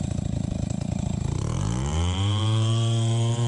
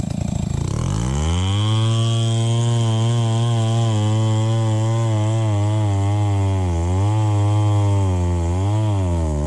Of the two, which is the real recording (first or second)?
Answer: second